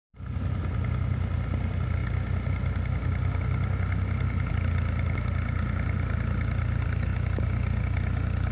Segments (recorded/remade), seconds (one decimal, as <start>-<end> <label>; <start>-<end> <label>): 0.0-8.5 recorded